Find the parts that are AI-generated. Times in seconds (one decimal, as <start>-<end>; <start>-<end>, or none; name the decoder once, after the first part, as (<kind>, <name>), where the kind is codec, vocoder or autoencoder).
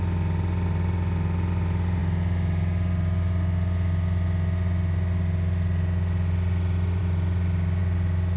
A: none